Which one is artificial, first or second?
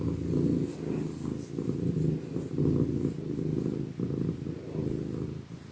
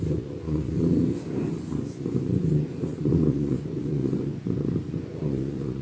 second